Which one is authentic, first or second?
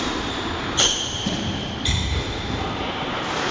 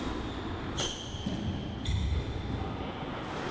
second